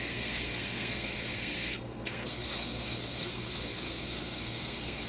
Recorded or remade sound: remade